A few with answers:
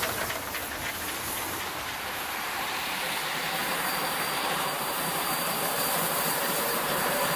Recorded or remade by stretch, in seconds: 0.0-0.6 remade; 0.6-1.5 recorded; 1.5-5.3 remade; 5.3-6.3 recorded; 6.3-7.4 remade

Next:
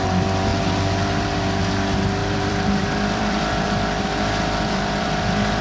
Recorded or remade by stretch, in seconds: 0.0-2.2 recorded; 2.2-5.6 remade

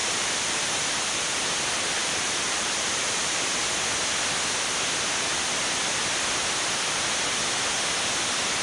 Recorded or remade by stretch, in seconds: 0.0-1.3 remade; 1.3-2.0 recorded; 2.0-3.4 remade; 3.4-8.6 recorded

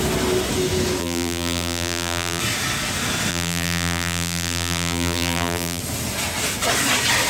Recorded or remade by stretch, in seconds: 0.0-1.0 recorded; 1.0-2.4 remade; 2.4-3.3 recorded; 3.3-5.8 remade; 5.8-7.3 recorded

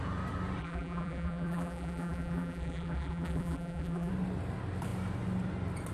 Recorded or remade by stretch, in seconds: 0.0-0.6 recorded; 0.6-4.1 remade; 4.1-5.9 recorded

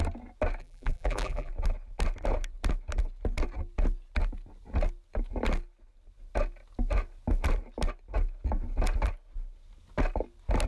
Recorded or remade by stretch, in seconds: 0.0-0.6 recorded; 0.6-1.5 remade; 1.5-10.7 recorded

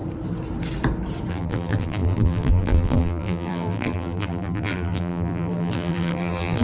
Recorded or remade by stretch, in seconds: 0.0-1.3 recorded; 1.3-6.6 remade